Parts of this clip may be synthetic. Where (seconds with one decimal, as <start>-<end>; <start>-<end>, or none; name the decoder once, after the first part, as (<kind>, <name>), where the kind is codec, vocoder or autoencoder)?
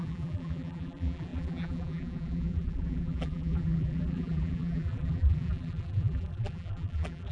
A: 0.0-7.3 (vocoder, BigVGAN v2)